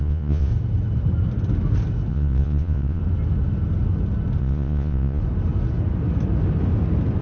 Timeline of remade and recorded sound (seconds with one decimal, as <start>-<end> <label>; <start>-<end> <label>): 0.0-0.5 remade; 0.5-2.1 recorded; 2.1-3.0 remade; 3.0-4.4 recorded; 4.4-5.2 remade; 5.2-7.2 recorded